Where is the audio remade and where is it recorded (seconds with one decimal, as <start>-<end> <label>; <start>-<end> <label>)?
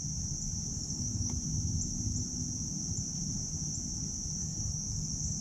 0.0-0.7 recorded; 0.7-1.3 remade; 1.3-4.4 recorded; 4.4-5.4 remade